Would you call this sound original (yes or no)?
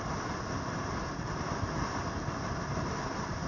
yes